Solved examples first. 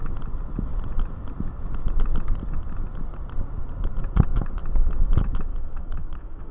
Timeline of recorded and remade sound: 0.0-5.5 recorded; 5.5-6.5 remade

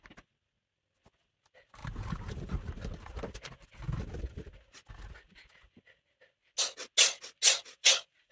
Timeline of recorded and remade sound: 0.0-8.3 recorded

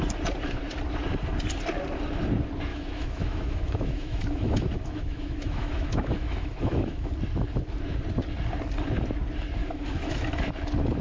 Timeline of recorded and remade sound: 0.0-2.7 recorded; 2.7-7.1 remade; 7.1-9.6 recorded; 9.6-10.5 remade; 10.5-11.0 recorded

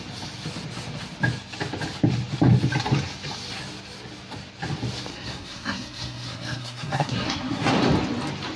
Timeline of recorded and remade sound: 0.0-5.1 recorded; 5.1-7.7 remade; 7.7-8.6 recorded

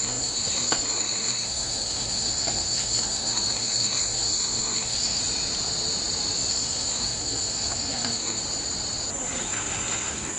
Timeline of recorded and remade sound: 0.0-5.2 remade; 5.2-6.5 recorded; 6.5-8.4 remade; 8.4-9.4 recorded; 9.4-10.4 remade

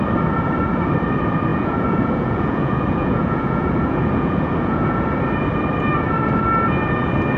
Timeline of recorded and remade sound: 0.0-1.5 recorded; 1.5-5.0 remade; 5.0-7.4 recorded

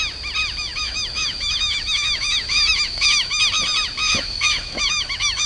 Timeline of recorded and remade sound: 0.0-0.7 recorded; 0.7-3.4 remade; 3.4-4.0 recorded; 4.0-5.5 remade

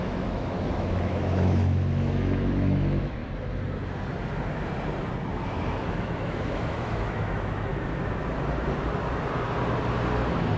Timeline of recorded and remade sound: 0.0-3.2 remade; 3.2-5.9 recorded; 5.9-7.7 remade; 7.7-10.6 recorded